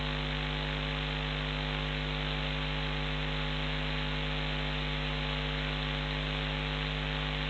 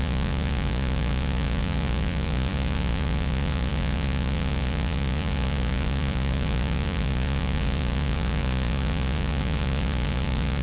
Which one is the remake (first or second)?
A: second